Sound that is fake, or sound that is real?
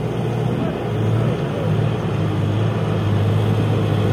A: real